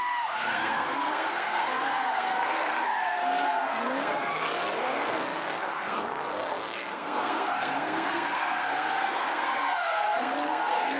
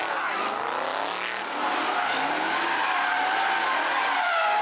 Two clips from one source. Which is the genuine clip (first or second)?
second